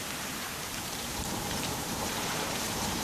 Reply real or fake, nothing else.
fake